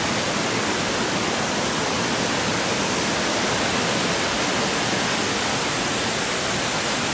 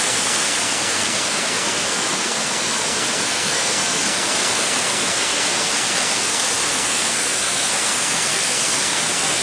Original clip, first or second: first